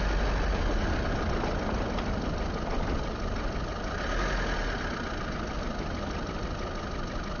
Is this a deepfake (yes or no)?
no